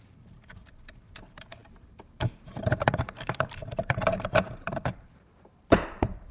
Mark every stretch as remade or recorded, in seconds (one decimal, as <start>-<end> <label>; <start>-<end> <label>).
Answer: 0.0-6.3 remade